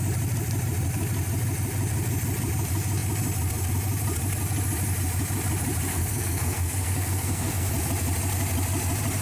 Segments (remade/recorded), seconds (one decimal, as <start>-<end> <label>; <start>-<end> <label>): 0.0-5.9 recorded; 5.9-7.7 remade; 7.7-9.2 recorded